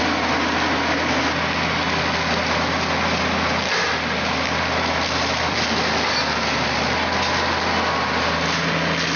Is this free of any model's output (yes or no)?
yes